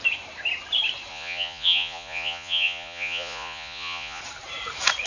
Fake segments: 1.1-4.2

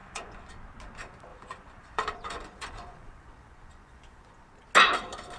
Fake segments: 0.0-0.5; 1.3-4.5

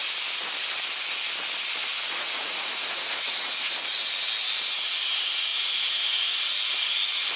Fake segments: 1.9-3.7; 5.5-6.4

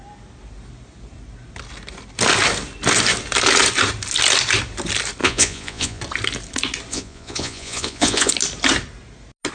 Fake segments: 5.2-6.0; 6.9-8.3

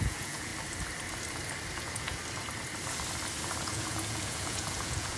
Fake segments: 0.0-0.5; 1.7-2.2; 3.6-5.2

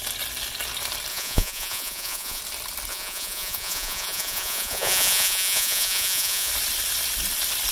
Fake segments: 1.1-2.4; 2.9-6.5

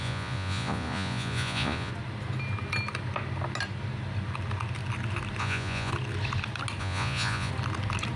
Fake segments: 0.0-1.9; 5.4-5.9; 6.8-7.5

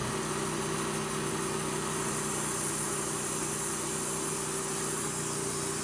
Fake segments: none